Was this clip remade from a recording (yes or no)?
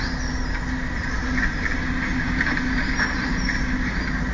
no